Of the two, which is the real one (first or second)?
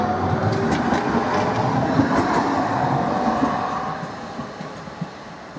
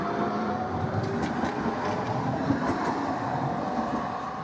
first